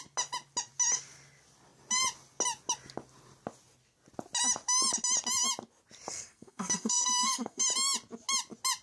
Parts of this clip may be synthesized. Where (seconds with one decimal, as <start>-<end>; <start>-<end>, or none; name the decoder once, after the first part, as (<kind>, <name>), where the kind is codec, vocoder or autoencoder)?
6.1-7.6 (codec, SNAC)